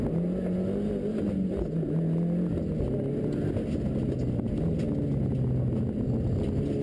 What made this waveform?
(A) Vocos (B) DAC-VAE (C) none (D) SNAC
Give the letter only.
C